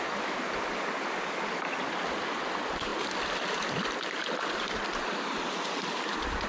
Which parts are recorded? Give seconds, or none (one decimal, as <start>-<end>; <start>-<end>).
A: 0.0-6.5